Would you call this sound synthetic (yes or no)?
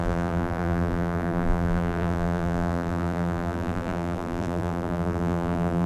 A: yes